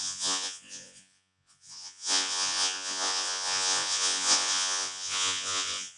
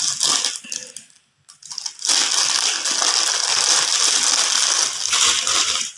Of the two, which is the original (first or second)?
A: second